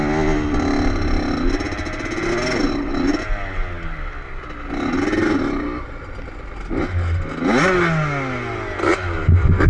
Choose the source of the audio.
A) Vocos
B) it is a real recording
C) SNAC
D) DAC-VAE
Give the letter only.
B